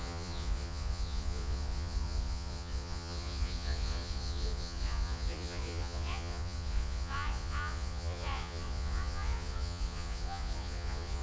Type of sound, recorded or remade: remade